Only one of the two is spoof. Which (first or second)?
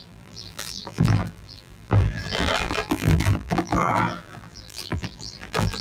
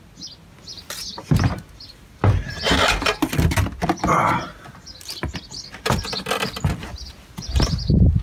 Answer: first